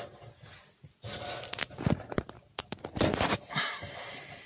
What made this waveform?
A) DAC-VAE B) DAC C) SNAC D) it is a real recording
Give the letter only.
D